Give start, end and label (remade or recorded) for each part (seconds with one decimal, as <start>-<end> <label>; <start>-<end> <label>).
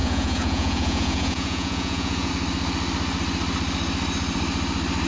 0.0-2.3 remade; 2.3-5.1 recorded